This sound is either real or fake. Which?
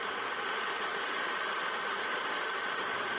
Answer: real